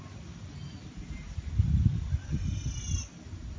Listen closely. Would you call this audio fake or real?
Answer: real